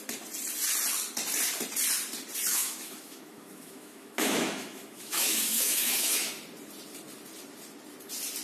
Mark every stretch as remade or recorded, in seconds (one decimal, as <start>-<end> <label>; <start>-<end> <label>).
0.0-2.5 recorded; 2.5-6.3 remade; 6.3-8.4 recorded